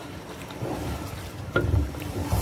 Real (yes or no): no